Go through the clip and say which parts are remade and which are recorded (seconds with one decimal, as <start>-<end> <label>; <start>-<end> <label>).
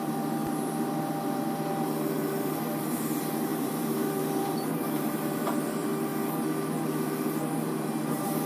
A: 0.0-6.1 remade; 6.1-6.7 recorded; 6.7-8.5 remade